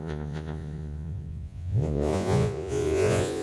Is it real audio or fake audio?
fake